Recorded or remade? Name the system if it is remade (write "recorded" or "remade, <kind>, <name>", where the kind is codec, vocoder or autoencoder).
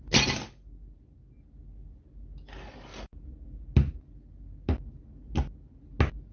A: recorded